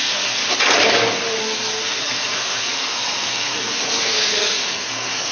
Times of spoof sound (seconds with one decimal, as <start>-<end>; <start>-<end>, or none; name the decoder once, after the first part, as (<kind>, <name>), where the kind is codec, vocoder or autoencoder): 0.0-0.4 (codec, SNAC); 1.4-5.3

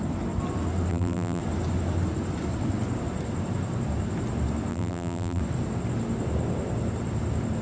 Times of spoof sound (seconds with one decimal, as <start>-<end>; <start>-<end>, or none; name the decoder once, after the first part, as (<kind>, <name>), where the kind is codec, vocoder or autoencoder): 0.9-1.4 (vocoder, BigVGAN v2); 4.7-5.4